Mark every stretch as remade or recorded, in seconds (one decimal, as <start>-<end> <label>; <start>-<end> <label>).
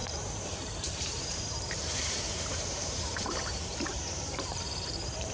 0.0-5.3 remade